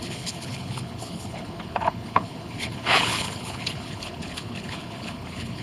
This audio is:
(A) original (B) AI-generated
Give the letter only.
B